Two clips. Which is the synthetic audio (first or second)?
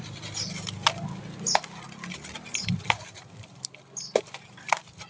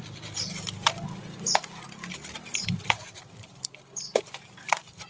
second